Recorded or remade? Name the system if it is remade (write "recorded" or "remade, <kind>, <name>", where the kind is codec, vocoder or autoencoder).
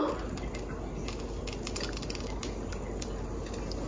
recorded